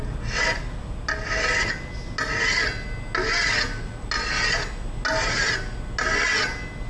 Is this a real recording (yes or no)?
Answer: yes